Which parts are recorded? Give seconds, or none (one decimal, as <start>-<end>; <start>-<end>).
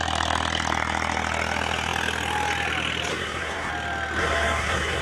0.0-3.1; 3.7-4.2